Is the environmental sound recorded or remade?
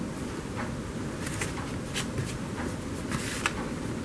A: recorded